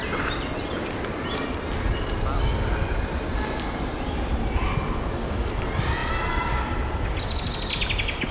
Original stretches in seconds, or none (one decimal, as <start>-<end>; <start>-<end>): 0.0-8.3